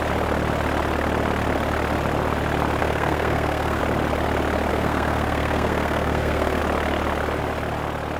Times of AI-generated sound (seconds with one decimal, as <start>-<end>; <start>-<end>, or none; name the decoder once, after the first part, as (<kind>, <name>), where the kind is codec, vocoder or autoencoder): 2.8-3.8 (codec, SNAC); 4.7-6.6